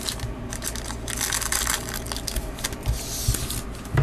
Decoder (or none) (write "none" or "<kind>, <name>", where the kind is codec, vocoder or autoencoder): none